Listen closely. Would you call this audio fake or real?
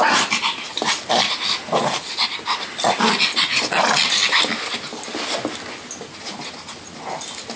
real